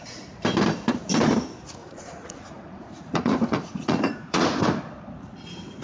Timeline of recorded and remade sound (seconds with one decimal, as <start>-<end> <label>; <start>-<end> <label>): 0.0-1.8 recorded; 1.8-4.8 remade; 4.8-5.8 recorded